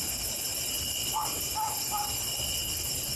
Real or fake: real